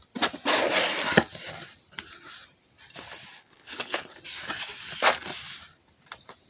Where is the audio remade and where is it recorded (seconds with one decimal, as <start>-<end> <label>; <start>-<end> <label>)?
0.0-3.4 recorded; 3.4-4.2 remade; 4.2-6.5 recorded